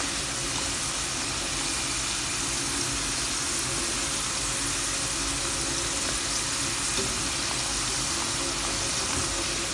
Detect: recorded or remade recorded